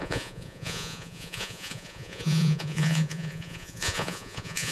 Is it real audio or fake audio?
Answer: fake